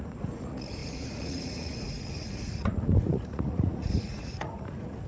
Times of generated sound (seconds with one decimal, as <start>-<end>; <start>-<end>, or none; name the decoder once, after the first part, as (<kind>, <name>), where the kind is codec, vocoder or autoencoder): 0.0-5.1 (vocoder, Vocos)